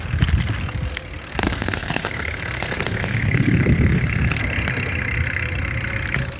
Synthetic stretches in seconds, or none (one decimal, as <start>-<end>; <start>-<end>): 1.4-4.4

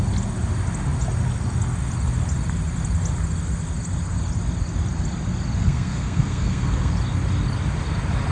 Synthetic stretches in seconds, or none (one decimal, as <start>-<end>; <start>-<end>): 5.6-6.9